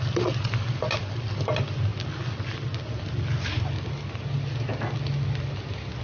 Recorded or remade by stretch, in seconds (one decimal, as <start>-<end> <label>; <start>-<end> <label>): 0.0-6.0 recorded